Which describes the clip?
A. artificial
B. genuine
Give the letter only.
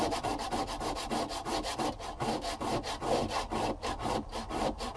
B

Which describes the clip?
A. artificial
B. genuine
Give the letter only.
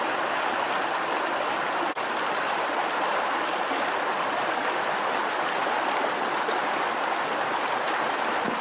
B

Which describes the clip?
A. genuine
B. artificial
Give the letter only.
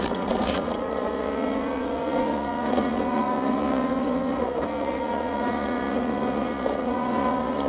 B